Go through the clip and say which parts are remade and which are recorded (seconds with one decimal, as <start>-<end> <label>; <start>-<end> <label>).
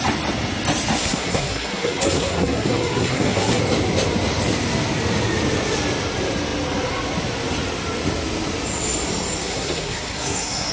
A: 0.0-1.0 recorded; 1.0-3.6 remade; 3.6-9.4 recorded; 9.4-10.7 remade